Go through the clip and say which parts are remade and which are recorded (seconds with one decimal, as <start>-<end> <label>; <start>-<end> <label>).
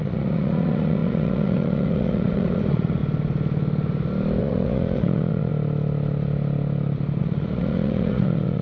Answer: 0.0-3.0 remade; 3.0-4.4 recorded; 4.4-5.5 remade; 5.5-7.2 recorded; 7.2-8.6 remade